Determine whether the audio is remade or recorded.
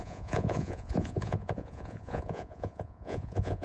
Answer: remade